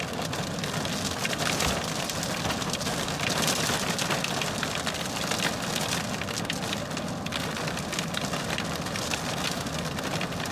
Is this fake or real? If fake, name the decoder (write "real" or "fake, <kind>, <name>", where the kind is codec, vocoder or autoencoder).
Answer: real